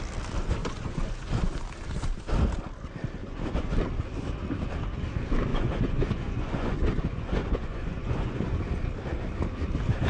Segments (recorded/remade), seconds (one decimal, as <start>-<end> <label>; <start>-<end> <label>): 0.0-0.6 recorded; 0.6-1.3 remade; 1.3-3.2 recorded; 3.2-3.7 remade; 3.7-5.5 recorded; 5.5-8.6 remade; 8.6-10.1 recorded